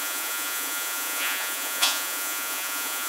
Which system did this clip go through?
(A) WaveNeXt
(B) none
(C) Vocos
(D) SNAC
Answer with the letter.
C